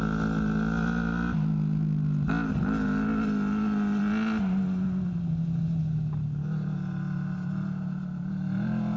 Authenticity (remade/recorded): recorded